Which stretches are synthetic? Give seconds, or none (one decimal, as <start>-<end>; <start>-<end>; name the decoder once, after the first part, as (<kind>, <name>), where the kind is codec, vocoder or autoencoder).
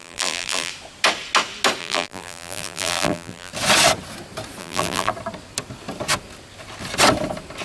0.0-0.7 (vocoder, BigVGAN v2); 1.8-3.5; 4.6-5.1